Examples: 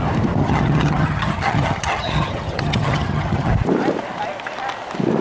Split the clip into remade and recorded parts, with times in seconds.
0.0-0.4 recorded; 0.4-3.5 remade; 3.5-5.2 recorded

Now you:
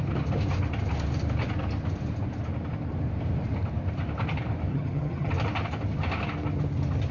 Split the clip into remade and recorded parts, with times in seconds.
0.0-4.7 recorded; 4.7-5.3 remade; 5.3-7.1 recorded